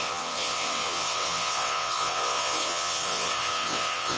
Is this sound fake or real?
fake